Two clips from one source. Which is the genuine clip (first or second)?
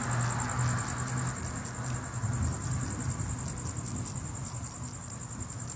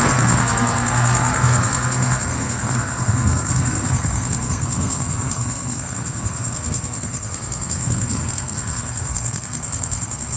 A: first